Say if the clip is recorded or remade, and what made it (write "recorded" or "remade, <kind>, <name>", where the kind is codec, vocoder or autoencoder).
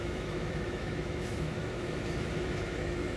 remade, autoencoder, DAC-VAE